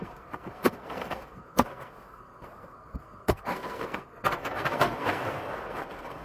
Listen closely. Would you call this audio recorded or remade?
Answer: remade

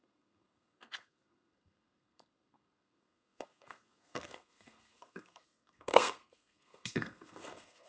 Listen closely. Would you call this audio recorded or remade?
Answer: remade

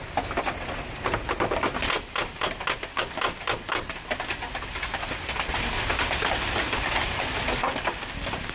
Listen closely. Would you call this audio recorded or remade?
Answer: recorded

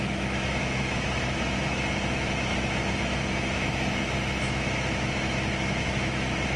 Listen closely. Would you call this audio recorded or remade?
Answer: remade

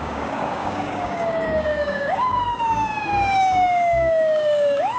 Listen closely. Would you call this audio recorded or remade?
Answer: remade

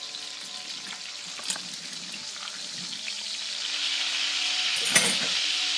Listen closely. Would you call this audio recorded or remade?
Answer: recorded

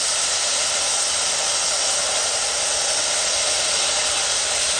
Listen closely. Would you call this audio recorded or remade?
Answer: recorded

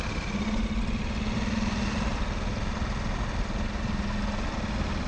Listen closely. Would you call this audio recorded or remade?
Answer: recorded